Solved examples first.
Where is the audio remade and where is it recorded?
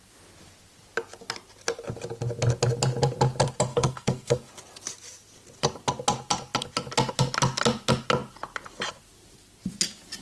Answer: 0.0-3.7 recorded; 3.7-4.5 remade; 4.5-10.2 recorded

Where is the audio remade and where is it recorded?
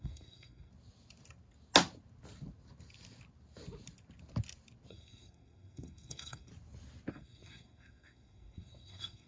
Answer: 0.0-0.7 remade; 0.7-4.9 recorded; 4.9-6.5 remade; 6.5-7.1 recorded; 7.1-9.3 remade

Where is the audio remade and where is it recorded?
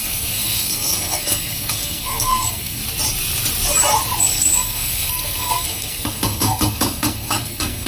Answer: 0.0-2.8 remade; 2.8-4.2 recorded; 4.2-7.9 remade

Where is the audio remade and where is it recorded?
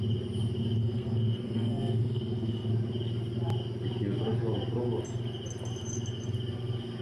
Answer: 0.0-0.8 recorded; 0.8-2.7 remade; 2.7-7.0 recorded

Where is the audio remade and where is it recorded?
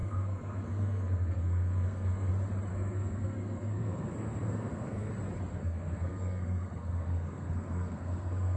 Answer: 0.0-2.3 remade; 2.3-2.7 recorded; 2.7-5.1 remade; 5.1-5.5 recorded; 5.5-8.6 remade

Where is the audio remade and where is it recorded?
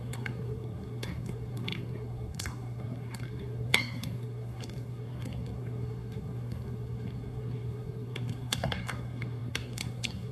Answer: 0.0-10.3 remade